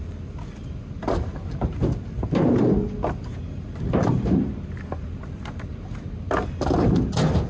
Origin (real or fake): real